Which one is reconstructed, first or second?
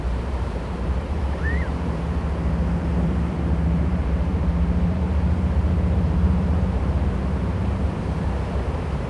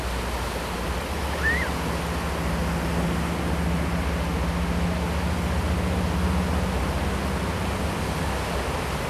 first